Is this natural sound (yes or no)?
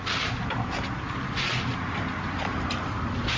yes